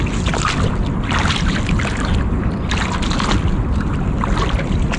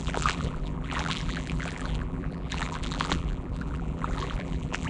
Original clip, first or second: first